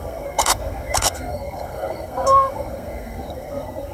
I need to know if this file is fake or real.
fake